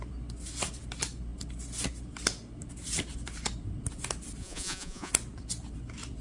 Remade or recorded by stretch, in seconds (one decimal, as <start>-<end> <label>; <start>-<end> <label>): 0.0-4.4 recorded; 4.4-5.1 remade; 5.1-6.2 recorded